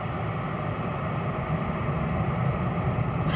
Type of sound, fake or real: real